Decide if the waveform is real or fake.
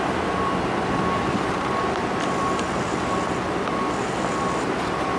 real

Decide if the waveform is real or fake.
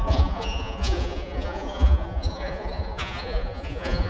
fake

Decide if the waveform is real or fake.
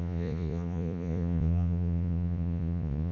fake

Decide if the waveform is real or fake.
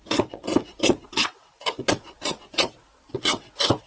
fake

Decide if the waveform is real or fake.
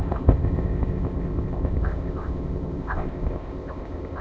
fake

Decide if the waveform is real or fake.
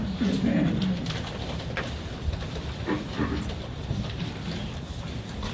fake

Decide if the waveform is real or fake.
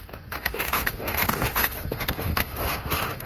fake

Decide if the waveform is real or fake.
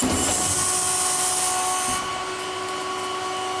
real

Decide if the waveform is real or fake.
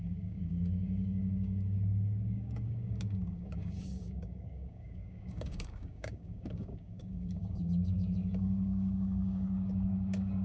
fake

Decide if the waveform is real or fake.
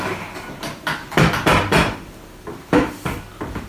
real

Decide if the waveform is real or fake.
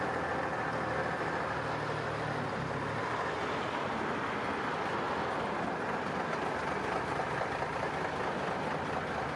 real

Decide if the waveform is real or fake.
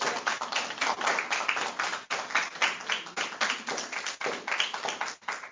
real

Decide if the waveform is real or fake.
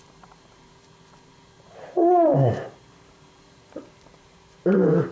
fake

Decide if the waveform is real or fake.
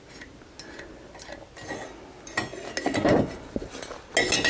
real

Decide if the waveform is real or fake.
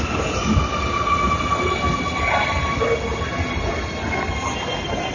real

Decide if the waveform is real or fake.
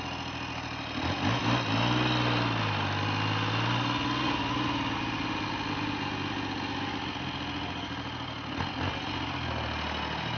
real